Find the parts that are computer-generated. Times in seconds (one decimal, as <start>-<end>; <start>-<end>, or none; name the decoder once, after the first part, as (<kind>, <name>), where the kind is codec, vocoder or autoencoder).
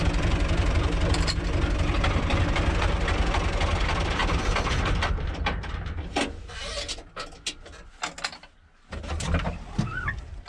none